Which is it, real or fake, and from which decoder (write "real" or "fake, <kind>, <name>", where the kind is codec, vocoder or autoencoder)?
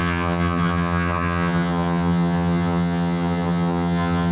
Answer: fake, vocoder, HiFi-GAN